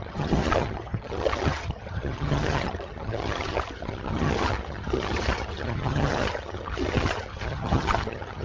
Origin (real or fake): fake